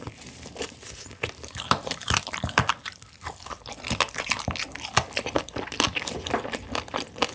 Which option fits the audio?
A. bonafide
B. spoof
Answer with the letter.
B